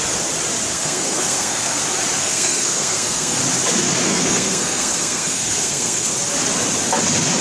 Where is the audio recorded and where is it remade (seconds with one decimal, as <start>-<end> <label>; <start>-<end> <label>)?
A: 0.0-0.7 recorded; 0.7-1.8 remade; 1.8-2.2 recorded; 2.2-3.4 remade; 3.4-4.1 recorded; 4.1-6.1 remade; 6.1-7.4 recorded

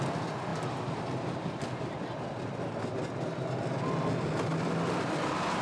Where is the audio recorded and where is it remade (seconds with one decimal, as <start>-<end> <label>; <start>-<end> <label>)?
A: 0.0-5.6 recorded

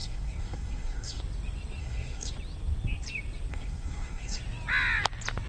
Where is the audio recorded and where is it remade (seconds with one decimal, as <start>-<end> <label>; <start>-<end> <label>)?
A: 0.0-1.2 remade; 1.2-1.8 recorded; 1.8-2.3 remade; 2.3-3.5 recorded; 3.5-4.4 remade; 4.4-5.5 recorded

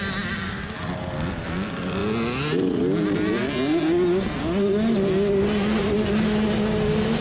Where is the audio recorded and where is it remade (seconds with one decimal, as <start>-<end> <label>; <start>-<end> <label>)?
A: 0.0-7.2 recorded

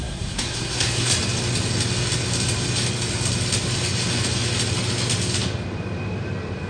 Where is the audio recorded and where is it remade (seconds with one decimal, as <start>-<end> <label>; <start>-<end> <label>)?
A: 0.0-1.1 remade; 1.1-6.7 recorded

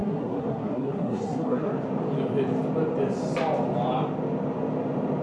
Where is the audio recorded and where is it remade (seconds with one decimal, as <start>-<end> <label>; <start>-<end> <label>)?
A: 0.0-1.7 remade; 1.7-5.2 recorded